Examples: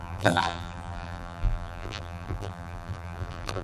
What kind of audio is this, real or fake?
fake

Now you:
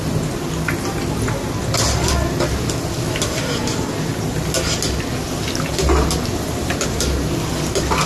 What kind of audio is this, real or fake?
real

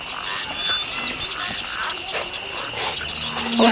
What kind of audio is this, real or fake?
real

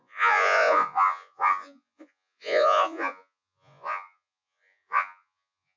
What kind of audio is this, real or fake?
fake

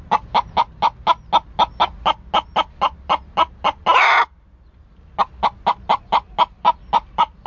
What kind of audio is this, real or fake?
real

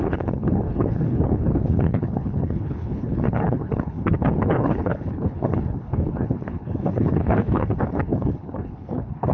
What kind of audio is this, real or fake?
fake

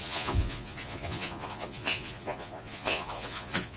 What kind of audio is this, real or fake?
fake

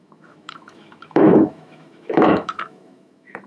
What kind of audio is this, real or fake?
fake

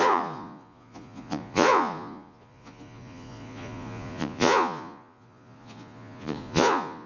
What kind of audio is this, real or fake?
fake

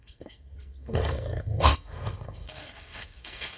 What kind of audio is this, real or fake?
fake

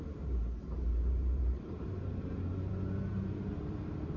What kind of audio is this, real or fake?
fake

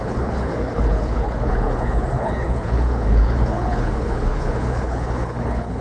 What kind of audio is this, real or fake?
fake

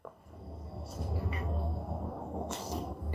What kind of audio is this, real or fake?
fake